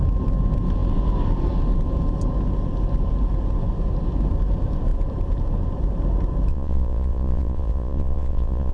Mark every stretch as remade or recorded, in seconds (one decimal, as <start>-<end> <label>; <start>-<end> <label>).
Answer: 0.0-6.5 recorded; 6.5-8.7 remade